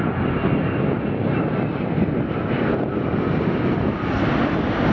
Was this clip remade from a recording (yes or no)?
no